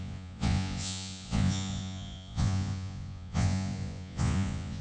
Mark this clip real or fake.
fake